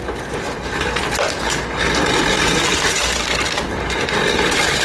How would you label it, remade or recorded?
recorded